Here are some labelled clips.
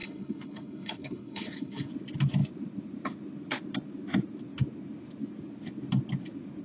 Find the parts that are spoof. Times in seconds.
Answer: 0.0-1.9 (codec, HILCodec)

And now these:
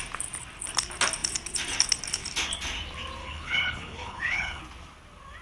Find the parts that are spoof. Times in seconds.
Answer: 3.2-4.6 (codec, HILCodec)